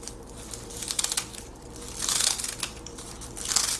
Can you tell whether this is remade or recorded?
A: recorded